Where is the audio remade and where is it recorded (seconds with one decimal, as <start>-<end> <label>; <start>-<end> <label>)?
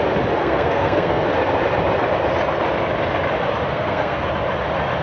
0.0-0.4 recorded; 0.4-1.2 remade; 1.2-3.7 recorded; 3.7-4.3 remade; 4.3-5.0 recorded